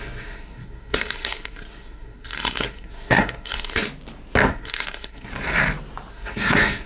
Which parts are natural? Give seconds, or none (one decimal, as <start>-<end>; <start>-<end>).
3.9-4.5; 5.3-6.1